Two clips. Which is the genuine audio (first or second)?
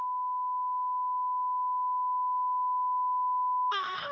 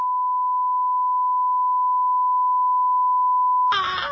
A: second